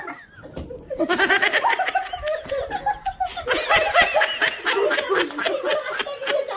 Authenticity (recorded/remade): recorded